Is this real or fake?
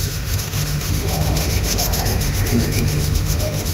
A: fake